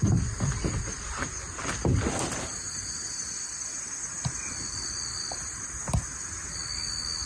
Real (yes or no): yes